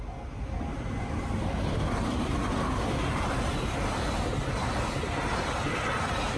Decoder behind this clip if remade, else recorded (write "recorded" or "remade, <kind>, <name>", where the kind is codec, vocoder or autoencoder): recorded